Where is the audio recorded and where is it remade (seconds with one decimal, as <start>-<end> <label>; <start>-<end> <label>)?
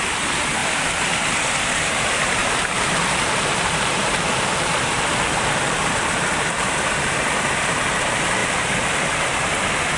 0.0-2.4 recorded; 2.4-6.7 remade; 6.7-8.4 recorded; 8.4-9.5 remade; 9.5-10.0 recorded